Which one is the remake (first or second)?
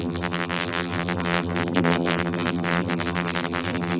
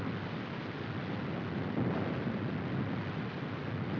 first